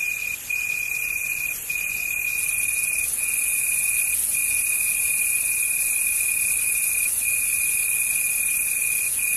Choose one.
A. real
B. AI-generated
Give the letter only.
B